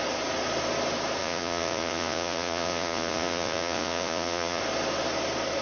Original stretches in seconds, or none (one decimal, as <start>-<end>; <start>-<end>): 0.0-1.2; 4.6-5.6